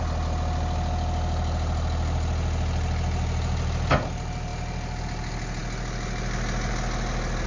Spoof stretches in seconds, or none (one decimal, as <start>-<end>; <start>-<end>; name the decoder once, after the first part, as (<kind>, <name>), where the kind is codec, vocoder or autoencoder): none